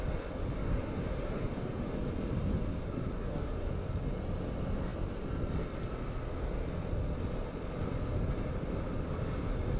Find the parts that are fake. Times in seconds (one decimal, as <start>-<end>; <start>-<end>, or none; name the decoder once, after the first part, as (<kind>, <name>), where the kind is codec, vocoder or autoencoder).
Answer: 0.6-1.9 (autoencoder, DAC-VAE); 3.2-3.7